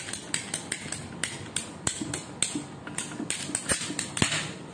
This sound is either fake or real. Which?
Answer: real